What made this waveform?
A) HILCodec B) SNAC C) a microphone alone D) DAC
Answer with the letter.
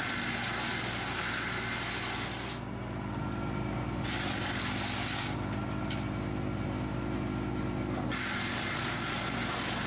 C